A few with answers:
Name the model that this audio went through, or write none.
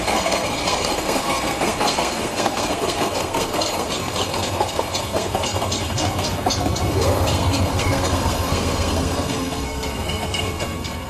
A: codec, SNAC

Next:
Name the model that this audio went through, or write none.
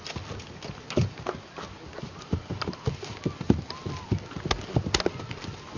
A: none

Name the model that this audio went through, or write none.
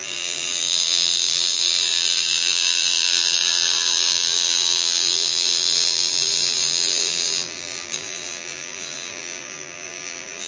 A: vocoder, BigVGAN v2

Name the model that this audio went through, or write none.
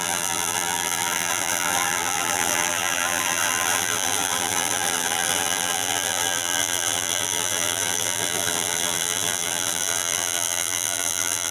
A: vocoder, BigVGAN v2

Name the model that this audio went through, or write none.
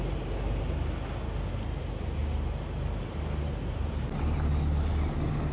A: none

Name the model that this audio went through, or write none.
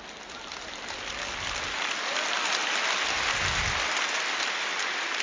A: none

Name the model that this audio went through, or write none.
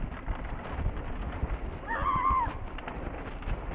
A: none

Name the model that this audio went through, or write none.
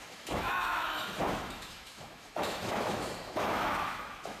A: autoencoder, DAC-VAE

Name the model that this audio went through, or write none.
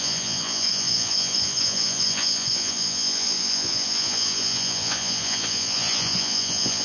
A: vocoder, Vocos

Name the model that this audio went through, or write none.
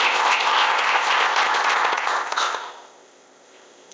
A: codec, ZipCodec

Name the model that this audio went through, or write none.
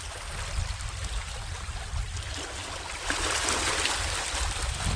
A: none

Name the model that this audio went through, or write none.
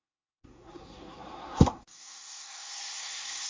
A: codec, SNAC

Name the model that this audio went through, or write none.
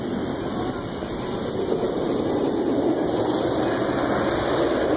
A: none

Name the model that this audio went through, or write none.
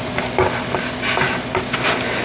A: none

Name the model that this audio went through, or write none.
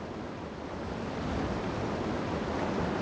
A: none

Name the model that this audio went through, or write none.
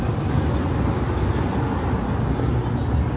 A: none